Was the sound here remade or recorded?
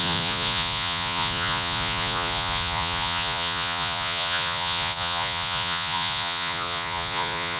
remade